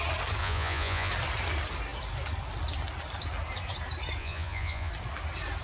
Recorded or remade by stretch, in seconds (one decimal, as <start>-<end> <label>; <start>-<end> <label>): 0.0-0.4 recorded; 0.4-1.1 remade; 1.1-4.2 recorded; 4.2-4.9 remade; 4.9-5.6 recorded